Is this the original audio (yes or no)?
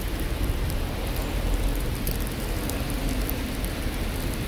yes